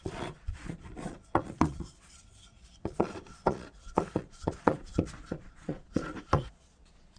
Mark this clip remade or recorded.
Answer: remade